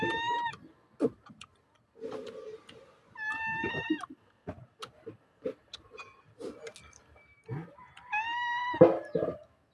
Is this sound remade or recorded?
recorded